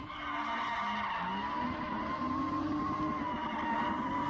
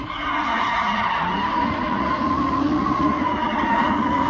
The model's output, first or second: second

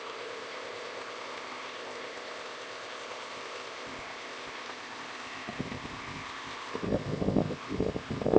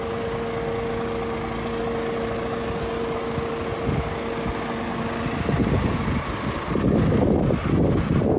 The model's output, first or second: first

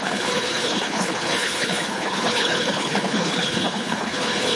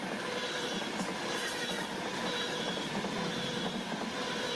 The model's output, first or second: first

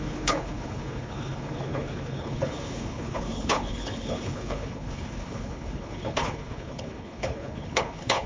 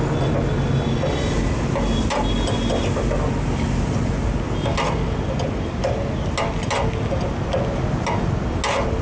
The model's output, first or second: first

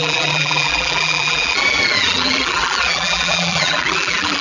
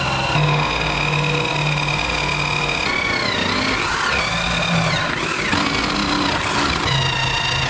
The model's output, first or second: first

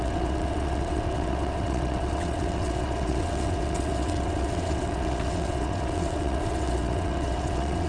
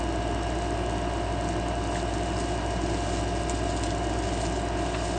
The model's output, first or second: first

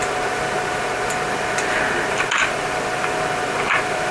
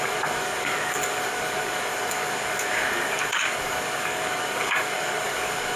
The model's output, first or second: second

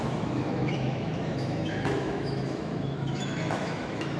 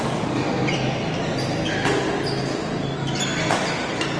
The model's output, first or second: first